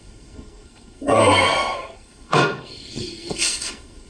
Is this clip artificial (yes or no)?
yes